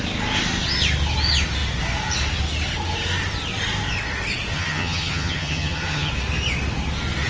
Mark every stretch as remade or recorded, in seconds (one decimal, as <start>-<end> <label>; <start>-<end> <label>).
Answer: 0.0-4.5 recorded; 4.5-6.1 remade; 6.1-7.3 recorded